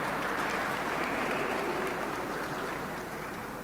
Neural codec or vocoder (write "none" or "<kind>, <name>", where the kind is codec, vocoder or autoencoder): vocoder, BigVGAN v2